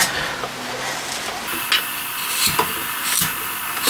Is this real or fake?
real